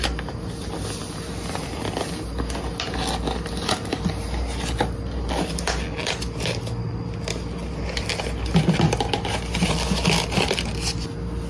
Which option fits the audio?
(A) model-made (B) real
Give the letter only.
B